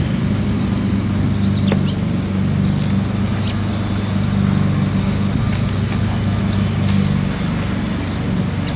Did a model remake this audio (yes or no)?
no